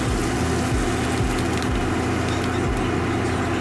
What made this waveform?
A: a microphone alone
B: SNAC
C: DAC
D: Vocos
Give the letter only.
A